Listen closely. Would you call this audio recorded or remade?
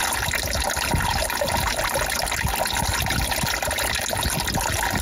recorded